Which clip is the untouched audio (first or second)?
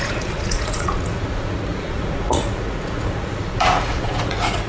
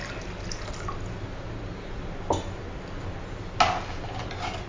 second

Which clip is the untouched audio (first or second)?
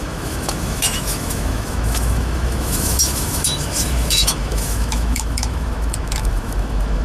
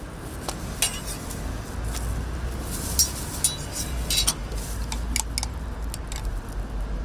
second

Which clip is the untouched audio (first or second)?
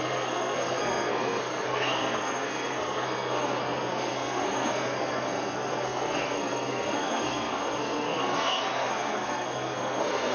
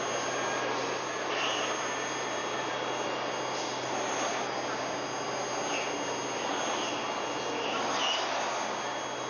second